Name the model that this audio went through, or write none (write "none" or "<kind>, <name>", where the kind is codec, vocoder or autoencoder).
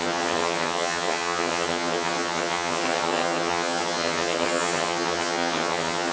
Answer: vocoder, HiFi-GAN